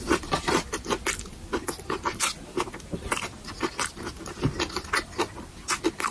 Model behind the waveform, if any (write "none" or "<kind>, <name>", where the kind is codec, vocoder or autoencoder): none